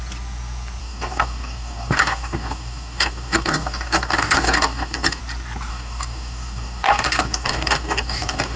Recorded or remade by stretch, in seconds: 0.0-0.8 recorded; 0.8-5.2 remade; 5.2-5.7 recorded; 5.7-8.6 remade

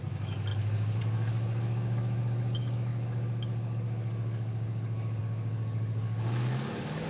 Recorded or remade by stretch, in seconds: 0.0-7.1 remade

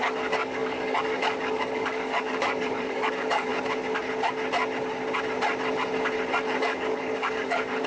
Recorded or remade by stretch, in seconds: 0.0-3.5 remade; 3.5-6.6 recorded; 6.6-7.9 remade